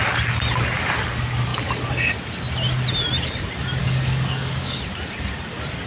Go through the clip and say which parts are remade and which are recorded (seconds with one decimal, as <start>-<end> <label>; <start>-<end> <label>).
0.0-3.8 recorded; 3.8-4.8 remade; 4.8-5.9 recorded